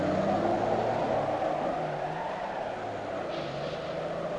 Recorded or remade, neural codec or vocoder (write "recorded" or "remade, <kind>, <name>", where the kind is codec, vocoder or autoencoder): recorded